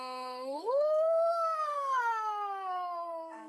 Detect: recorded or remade remade